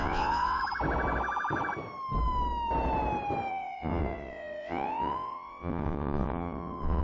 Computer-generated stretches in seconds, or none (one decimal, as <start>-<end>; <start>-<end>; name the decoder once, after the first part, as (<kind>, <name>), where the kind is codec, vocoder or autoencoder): 0.0-0.6 (vocoder, WaveNeXt); 3.5-7.0